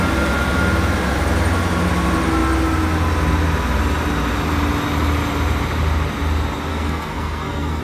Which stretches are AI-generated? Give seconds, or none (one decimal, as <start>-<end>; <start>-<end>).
6.7-7.8